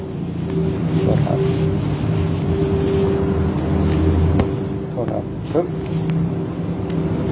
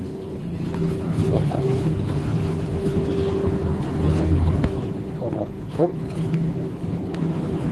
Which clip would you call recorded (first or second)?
first